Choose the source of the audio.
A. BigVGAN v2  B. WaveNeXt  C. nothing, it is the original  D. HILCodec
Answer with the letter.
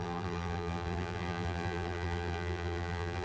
A